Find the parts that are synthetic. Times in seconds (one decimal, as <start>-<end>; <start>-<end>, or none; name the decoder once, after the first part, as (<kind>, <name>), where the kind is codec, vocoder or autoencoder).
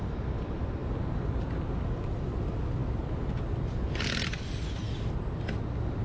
none